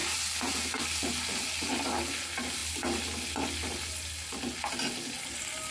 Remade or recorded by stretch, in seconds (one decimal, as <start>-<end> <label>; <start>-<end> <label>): 0.0-5.7 recorded